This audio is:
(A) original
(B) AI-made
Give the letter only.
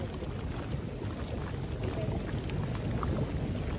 A